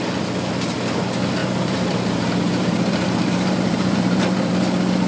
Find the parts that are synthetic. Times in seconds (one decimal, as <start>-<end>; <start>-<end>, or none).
1.4-4.5